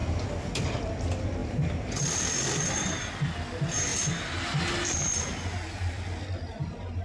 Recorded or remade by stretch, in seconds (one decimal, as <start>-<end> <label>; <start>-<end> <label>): 0.0-7.0 recorded